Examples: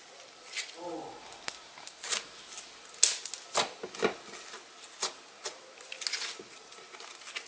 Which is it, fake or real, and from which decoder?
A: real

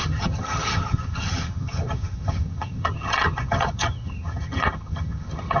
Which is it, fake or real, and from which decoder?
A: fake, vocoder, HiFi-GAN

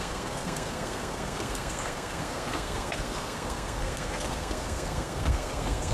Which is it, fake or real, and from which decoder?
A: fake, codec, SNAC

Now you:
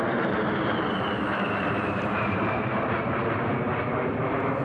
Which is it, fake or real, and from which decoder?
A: fake, vocoder, BigVGAN v2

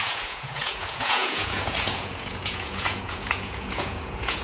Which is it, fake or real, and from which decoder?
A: fake, vocoder, Vocos